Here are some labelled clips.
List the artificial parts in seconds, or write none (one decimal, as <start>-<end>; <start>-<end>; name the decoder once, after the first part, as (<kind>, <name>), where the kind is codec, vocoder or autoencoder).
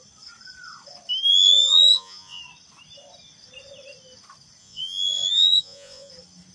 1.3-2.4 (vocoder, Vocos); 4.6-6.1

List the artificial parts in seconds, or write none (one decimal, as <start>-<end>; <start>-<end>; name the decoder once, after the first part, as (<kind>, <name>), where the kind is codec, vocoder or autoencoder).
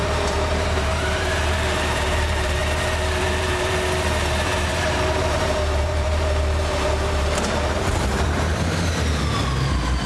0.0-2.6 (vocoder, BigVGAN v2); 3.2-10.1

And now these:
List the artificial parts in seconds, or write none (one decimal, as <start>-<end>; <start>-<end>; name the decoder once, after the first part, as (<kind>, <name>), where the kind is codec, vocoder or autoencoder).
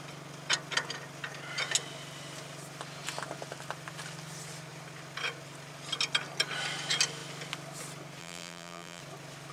8.2-9.0 (vocoder, BigVGAN v2)